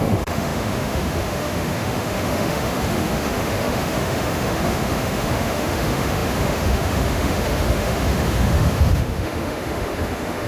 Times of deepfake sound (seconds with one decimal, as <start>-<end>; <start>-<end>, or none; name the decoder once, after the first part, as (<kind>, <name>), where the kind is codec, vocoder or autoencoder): 0.0-10.5 (autoencoder, DAC-VAE)